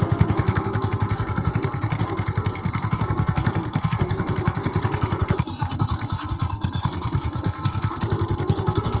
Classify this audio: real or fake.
fake